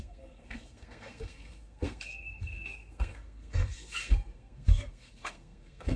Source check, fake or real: fake